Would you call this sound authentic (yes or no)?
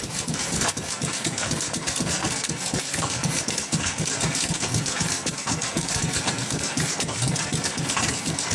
no